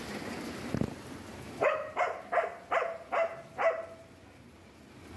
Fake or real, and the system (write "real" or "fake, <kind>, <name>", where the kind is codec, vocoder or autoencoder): real